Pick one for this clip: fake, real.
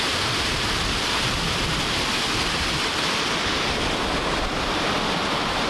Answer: real